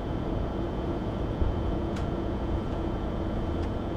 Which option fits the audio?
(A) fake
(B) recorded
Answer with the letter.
A